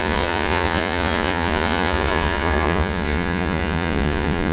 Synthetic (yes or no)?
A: yes